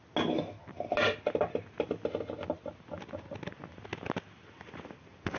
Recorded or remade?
recorded